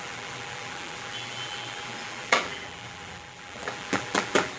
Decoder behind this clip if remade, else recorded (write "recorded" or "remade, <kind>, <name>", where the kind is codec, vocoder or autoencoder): remade, vocoder, BigVGAN v2